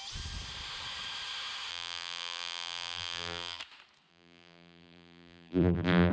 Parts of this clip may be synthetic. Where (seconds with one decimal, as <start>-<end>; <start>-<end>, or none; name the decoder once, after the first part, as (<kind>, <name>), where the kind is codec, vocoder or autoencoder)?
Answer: 1.7-3.6 (vocoder, BigVGAN v2); 4.1-6.1